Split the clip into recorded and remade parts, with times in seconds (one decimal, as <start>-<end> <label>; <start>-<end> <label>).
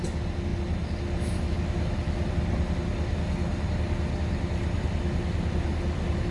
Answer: 0.0-6.3 recorded